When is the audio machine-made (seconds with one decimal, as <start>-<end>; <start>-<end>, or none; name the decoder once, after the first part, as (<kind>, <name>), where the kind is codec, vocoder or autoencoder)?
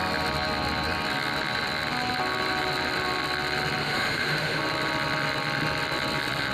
3.8-4.6 (autoencoder, DAC-VAE)